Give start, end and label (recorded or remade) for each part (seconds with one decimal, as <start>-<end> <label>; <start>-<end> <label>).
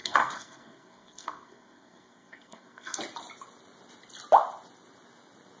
0.0-3.0 remade; 3.0-5.6 recorded